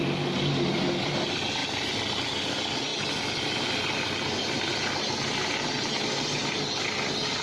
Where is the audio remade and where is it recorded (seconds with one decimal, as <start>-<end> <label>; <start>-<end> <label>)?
0.0-7.4 recorded

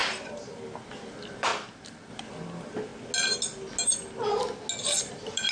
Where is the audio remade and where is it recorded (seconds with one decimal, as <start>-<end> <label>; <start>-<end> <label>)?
0.0-2.9 remade; 2.9-5.1 recorded; 5.1-5.5 remade

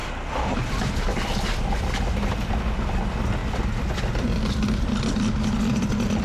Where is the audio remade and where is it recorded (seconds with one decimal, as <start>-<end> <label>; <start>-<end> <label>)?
0.0-6.2 recorded

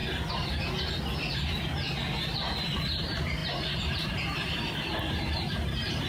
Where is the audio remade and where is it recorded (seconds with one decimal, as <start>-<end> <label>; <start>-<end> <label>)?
0.0-2.2 recorded; 2.2-6.1 remade

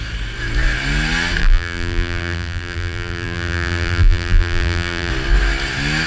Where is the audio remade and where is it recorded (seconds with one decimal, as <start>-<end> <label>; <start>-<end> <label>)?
0.0-1.4 recorded; 1.4-5.1 remade; 5.1-6.1 recorded

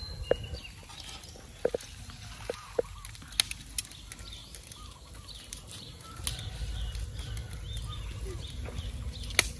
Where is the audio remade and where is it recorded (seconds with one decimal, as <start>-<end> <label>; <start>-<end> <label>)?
0.0-4.4 recorded; 4.4-6.2 remade; 6.2-9.6 recorded

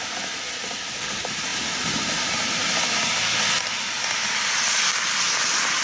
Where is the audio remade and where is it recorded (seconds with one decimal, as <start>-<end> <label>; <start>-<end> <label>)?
0.0-5.8 recorded